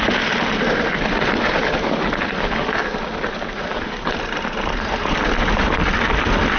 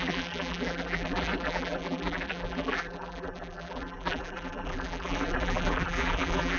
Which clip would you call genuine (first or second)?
first